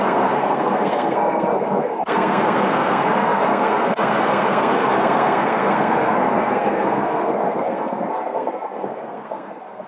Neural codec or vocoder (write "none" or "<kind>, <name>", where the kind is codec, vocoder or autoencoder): codec, SNAC